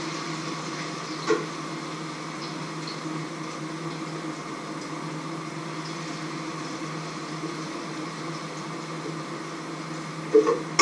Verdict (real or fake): real